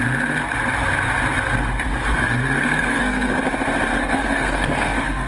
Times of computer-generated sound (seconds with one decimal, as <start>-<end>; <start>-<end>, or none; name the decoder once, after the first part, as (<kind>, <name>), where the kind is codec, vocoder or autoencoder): 2.1-3.3 (codec, SNAC); 4.0-5.3